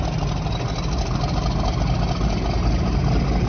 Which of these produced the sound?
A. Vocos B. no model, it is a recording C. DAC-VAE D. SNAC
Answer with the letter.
B